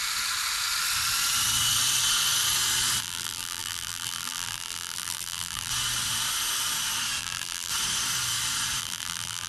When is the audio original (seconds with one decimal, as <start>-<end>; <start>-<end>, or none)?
0.0-3.0; 5.7-7.2; 7.7-8.8